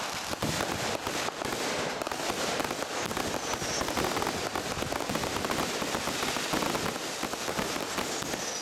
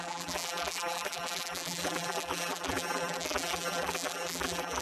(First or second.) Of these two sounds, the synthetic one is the second